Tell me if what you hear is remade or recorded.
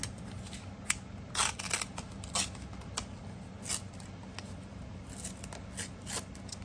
recorded